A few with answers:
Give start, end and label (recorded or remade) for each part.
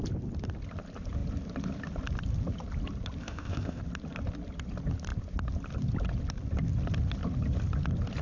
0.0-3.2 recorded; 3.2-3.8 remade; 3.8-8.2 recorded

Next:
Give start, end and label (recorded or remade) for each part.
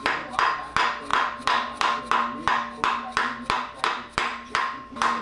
0.0-1.1 recorded; 1.1-2.0 remade; 2.0-4.3 recorded; 4.3-5.2 remade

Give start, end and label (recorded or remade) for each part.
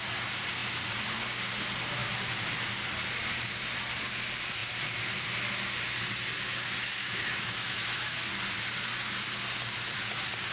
0.0-7.0 recorded; 7.0-8.3 remade; 8.3-10.5 recorded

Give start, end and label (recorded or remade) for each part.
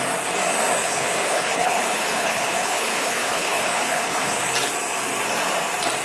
0.0-0.8 recorded; 0.8-4.4 remade; 4.4-6.0 recorded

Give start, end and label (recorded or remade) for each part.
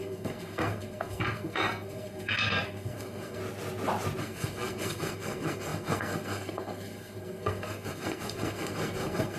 0.0-3.4 remade; 3.4-4.2 recorded; 4.2-9.4 remade